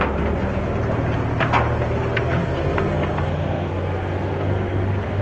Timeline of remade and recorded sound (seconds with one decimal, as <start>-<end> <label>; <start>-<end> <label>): 0.0-2.4 recorded; 2.4-5.2 remade